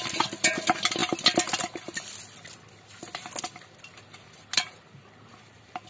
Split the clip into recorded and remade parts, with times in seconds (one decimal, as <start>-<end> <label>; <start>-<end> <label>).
0.0-5.9 recorded